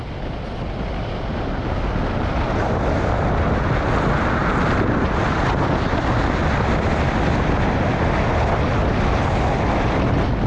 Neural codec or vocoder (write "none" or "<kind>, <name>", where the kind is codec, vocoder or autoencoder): none